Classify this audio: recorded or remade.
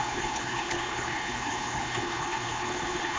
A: remade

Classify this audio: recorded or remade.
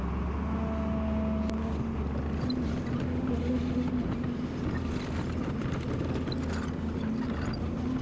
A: recorded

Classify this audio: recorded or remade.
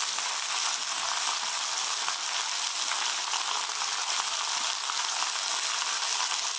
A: recorded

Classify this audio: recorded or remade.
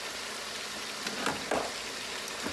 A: recorded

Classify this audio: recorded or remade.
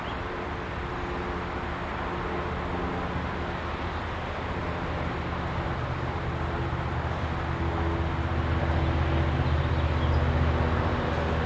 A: recorded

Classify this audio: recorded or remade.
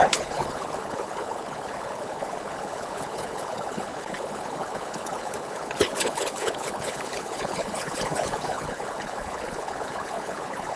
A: remade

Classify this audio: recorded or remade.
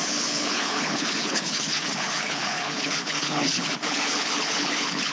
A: remade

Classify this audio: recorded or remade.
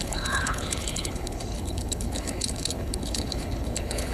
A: remade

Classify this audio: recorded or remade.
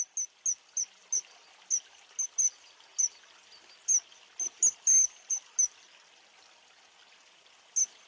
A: recorded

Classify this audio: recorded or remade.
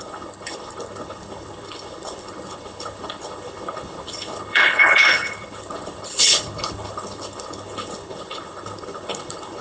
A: remade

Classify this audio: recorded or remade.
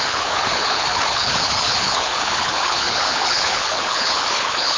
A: remade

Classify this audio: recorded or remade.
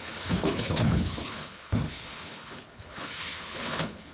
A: remade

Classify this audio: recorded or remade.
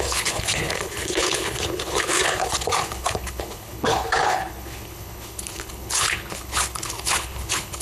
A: remade